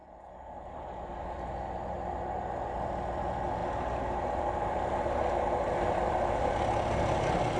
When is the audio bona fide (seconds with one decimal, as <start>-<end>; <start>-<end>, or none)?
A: 0.0-7.6